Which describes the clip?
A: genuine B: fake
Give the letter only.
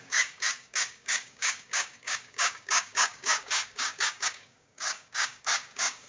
B